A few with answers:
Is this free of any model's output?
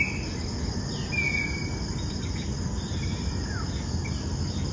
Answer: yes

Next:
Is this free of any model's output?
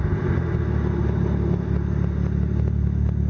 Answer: yes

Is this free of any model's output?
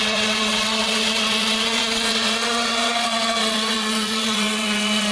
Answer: no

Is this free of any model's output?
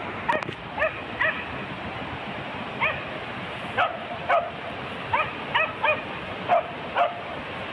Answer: yes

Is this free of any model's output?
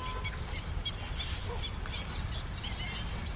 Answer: yes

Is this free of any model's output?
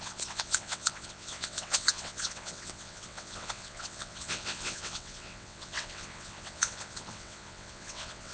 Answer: no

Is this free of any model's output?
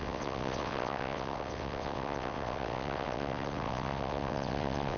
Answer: no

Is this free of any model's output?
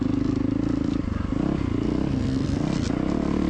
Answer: yes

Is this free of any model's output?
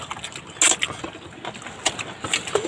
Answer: yes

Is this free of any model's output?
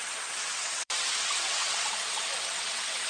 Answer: no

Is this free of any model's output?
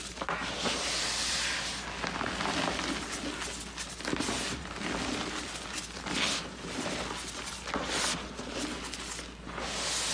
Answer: yes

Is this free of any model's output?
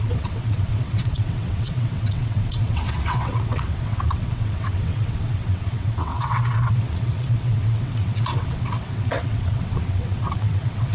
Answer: no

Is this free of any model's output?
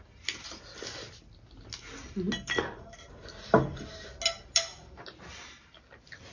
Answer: yes